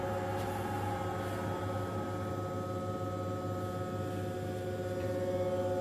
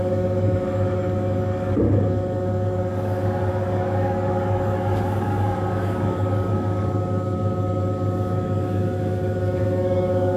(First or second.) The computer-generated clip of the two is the second